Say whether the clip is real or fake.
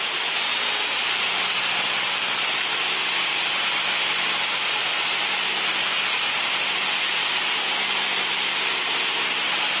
real